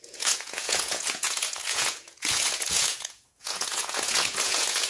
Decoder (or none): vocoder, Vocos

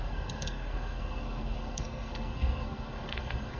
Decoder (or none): codec, SNAC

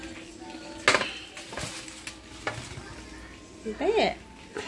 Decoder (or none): none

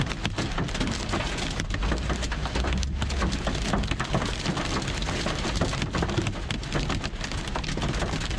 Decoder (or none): none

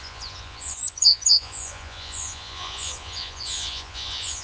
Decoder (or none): vocoder, Vocos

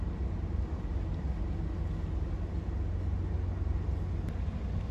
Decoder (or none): none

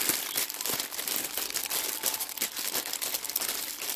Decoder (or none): none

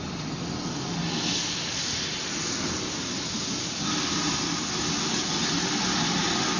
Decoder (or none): none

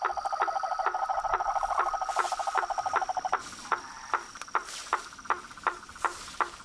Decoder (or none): vocoder, BigVGAN v2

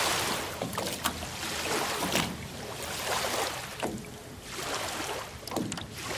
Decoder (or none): none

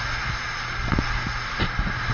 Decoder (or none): none